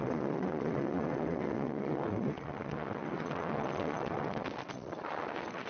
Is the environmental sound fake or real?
fake